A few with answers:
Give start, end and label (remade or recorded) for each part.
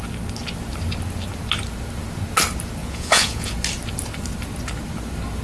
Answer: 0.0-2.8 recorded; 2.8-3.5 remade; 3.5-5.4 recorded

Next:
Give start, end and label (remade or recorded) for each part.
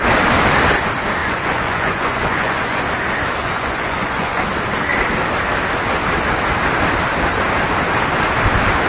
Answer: 0.0-1.2 recorded; 1.2-2.8 remade; 2.8-3.4 recorded; 3.4-4.4 remade; 4.4-8.9 recorded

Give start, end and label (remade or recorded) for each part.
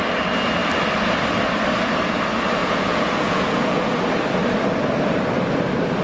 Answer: 0.0-2.6 recorded; 2.6-3.9 remade; 3.9-6.0 recorded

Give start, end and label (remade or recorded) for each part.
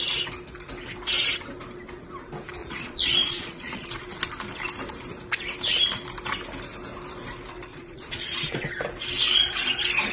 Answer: 0.0-2.6 recorded; 2.6-4.0 remade; 4.0-7.7 recorded; 7.7-8.7 remade; 8.7-10.1 recorded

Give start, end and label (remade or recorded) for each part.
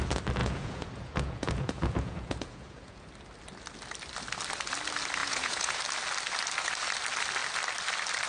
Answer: 0.0-0.4 recorded; 0.4-3.1 remade; 3.1-5.2 recorded; 5.2-5.8 remade; 5.8-8.3 recorded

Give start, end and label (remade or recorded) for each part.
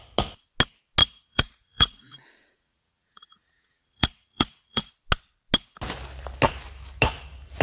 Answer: 0.0-1.0 recorded; 1.0-4.9 remade; 4.9-7.6 recorded